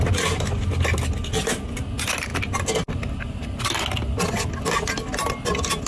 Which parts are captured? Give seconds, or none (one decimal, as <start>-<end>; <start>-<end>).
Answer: 0.0-5.9